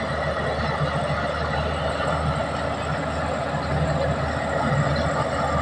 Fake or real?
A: real